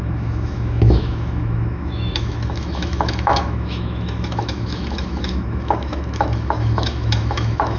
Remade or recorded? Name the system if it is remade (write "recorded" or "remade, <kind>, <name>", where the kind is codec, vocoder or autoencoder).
remade, autoencoder, DAC-VAE